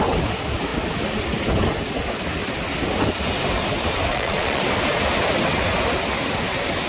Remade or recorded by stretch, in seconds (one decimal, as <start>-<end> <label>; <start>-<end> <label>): 0.0-4.1 recorded; 4.1-4.6 remade; 4.6-6.9 recorded